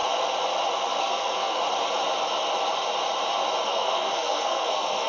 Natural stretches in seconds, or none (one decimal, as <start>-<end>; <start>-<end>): 0.0-1.0; 1.6-3.7